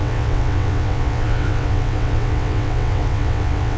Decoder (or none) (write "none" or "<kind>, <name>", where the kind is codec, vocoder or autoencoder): vocoder, WaveNeXt